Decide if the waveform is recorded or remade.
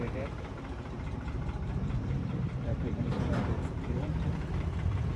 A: remade